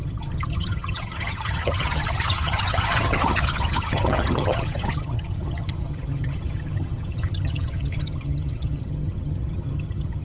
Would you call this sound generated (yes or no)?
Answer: yes